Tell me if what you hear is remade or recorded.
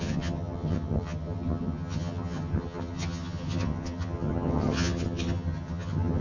remade